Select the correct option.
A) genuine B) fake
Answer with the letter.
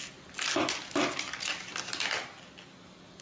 A